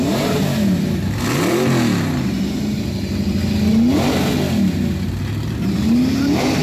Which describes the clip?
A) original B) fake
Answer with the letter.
A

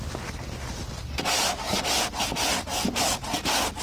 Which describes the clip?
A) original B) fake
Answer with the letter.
A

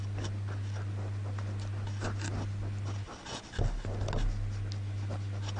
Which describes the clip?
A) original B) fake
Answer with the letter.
A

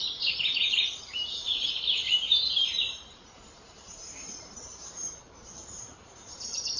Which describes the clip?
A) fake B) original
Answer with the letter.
A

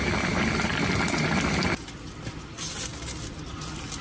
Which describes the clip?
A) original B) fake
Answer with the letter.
A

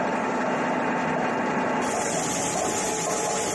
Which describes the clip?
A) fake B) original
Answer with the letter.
B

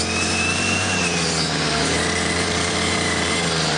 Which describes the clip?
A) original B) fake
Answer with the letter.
B